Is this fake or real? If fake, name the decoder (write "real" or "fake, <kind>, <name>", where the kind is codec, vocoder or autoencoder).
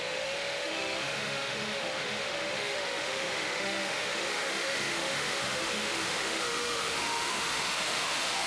fake, autoencoder, DAC-VAE